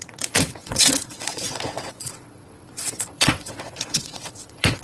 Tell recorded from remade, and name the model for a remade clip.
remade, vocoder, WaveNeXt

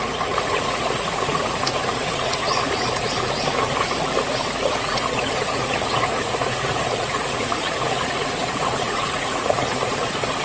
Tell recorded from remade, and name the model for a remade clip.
remade, vocoder, Vocos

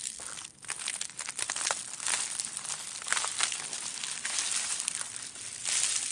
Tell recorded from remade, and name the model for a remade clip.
recorded